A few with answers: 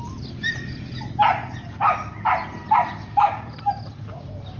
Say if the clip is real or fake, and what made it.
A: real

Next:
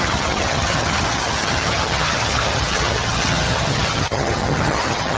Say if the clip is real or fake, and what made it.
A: fake, vocoder, HiFi-GAN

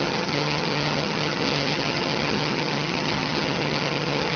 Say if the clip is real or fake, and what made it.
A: fake, vocoder, HiFi-GAN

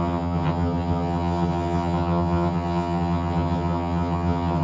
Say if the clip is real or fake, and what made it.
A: fake, vocoder, HiFi-GAN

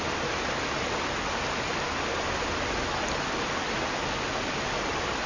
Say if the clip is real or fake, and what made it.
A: real